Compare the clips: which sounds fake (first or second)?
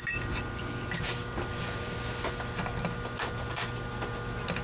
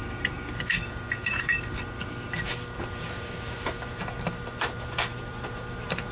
second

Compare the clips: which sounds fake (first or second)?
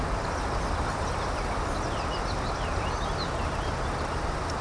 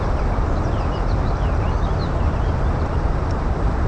second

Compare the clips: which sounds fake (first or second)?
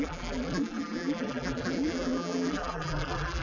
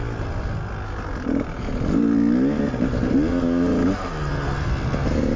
first